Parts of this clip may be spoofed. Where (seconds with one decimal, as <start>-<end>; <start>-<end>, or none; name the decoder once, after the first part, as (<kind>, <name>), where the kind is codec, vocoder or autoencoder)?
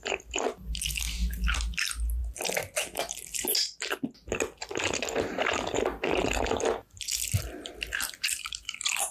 none